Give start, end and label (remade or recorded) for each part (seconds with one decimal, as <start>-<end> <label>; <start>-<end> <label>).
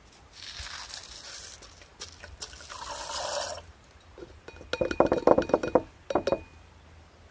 0.0-7.3 recorded